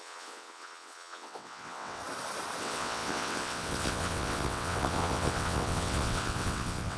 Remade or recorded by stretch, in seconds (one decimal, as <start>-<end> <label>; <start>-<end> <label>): 0.0-2.0 remade; 2.0-2.6 recorded; 2.6-7.0 remade